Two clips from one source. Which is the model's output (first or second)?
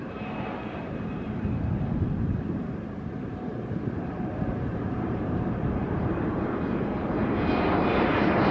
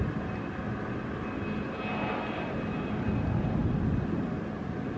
first